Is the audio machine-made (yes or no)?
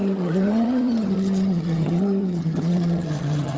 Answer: yes